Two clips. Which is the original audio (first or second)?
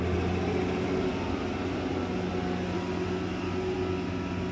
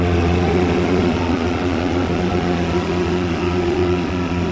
first